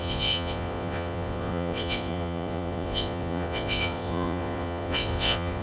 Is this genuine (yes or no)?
no